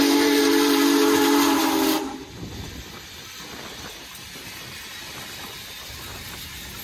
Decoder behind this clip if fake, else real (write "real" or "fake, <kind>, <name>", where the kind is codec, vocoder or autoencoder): real